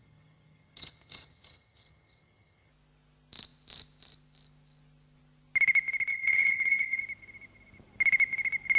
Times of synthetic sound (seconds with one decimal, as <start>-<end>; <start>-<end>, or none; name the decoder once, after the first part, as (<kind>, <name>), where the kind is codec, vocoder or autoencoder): 0.0-2.7 (vocoder, HiFi-GAN); 6.1-7.0

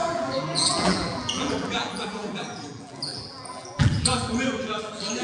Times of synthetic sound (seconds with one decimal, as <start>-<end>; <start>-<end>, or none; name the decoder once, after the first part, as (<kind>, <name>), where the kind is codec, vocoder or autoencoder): 0.0-5.2 (vocoder, BigVGAN v2)

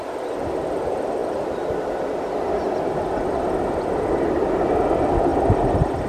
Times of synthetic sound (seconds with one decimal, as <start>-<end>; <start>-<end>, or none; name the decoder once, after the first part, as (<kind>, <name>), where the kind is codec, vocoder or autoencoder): 5.3-6.1 (vocoder, BigVGAN v2)

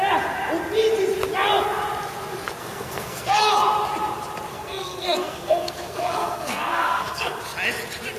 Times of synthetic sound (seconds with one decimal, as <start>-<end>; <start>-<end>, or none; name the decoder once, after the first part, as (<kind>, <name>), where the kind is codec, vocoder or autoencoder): 2.6-3.4 (codec, SNAC); 4.5-7.4

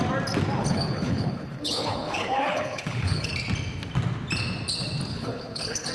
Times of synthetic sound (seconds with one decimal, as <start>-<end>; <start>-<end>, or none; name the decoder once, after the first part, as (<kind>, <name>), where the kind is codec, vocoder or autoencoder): 0.6-3.3 (codec, HILCodec); 5.1-5.9

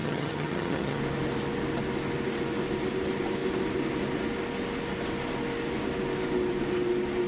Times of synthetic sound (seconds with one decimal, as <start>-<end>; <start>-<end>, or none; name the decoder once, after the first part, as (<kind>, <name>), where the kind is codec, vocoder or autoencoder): 0.0-1.0 (vocoder, HiFi-GAN)